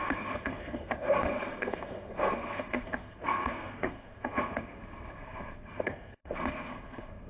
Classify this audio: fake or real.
fake